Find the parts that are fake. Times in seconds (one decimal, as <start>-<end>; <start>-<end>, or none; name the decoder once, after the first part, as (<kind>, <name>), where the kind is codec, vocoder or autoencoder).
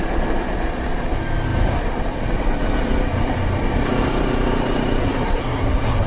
5.0-6.1 (codec, SNAC)